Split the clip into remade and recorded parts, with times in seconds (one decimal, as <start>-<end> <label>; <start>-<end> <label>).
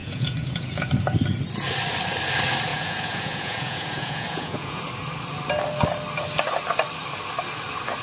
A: 0.0-0.9 remade; 0.9-2.7 recorded; 2.7-4.8 remade; 4.8-8.0 recorded